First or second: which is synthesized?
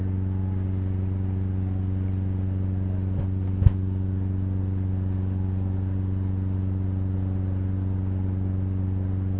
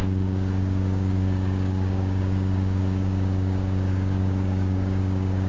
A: second